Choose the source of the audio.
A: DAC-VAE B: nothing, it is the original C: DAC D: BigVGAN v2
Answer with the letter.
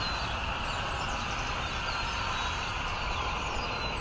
B